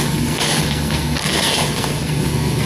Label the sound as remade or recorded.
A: remade